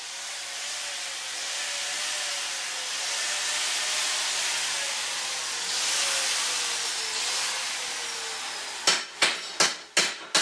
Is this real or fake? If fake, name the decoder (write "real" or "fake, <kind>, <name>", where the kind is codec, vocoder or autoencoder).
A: real